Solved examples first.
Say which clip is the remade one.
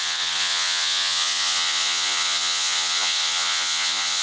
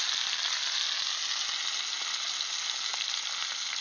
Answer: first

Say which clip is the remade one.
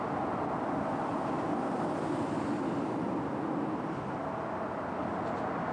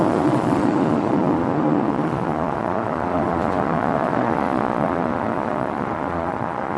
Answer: second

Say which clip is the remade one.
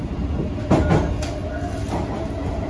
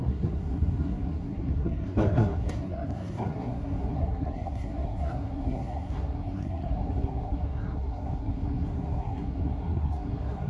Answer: second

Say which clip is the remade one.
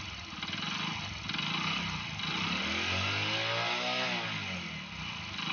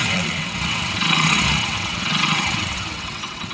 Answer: second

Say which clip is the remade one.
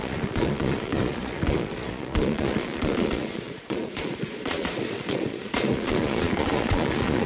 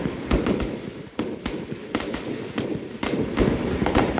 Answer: first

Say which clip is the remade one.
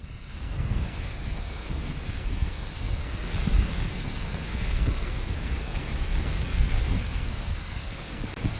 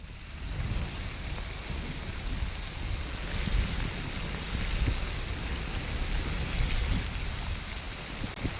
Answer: first